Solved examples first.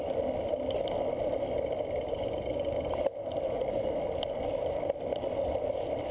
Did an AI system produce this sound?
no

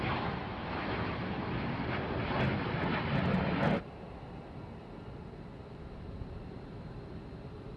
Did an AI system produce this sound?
no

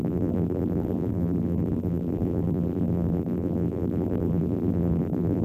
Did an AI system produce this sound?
yes